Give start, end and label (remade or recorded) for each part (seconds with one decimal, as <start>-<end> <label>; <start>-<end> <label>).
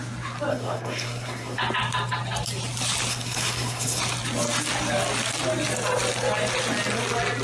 0.0-0.5 recorded; 0.5-1.6 remade; 1.6-3.1 recorded; 3.1-4.0 remade; 4.0-7.4 recorded